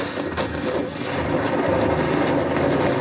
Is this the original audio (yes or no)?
yes